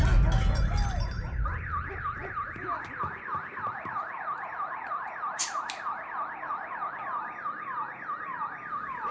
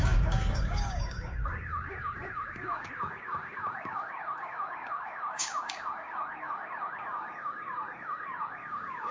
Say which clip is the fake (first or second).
second